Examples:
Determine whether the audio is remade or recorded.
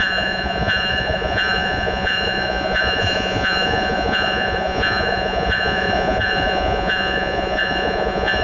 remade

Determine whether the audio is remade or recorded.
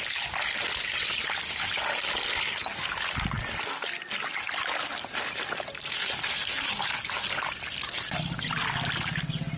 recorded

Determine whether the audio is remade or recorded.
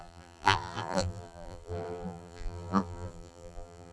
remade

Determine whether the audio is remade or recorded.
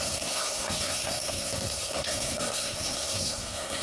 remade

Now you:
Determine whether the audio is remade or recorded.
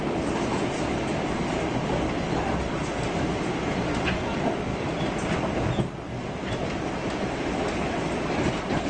recorded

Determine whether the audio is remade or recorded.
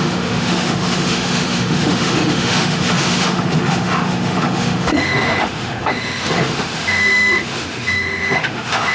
remade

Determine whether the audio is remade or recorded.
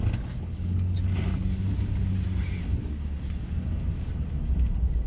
recorded